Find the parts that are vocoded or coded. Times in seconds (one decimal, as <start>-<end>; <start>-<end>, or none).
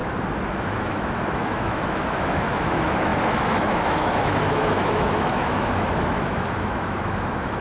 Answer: 0.5-7.6